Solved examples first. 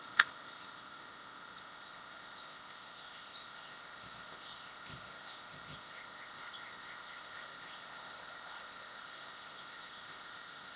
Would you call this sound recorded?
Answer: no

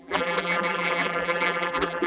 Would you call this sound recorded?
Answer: no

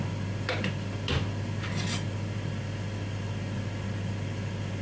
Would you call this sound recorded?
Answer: yes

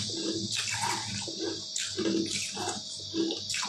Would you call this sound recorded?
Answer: yes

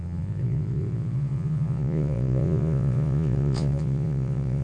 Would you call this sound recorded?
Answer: no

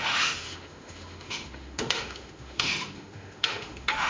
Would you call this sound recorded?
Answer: no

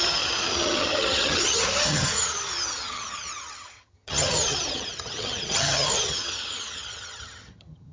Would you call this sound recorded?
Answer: no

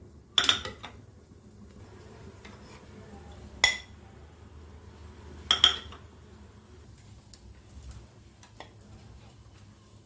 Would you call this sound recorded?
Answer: yes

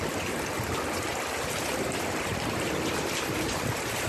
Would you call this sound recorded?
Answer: yes